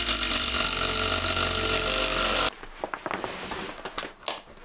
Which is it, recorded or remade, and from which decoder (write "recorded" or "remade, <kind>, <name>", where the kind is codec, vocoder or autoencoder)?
recorded